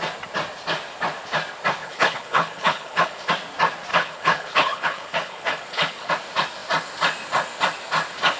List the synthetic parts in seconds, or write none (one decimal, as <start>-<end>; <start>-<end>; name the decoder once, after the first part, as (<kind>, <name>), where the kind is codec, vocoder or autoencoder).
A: 1.8-3.3 (codec, HILCodec); 3.9-6.1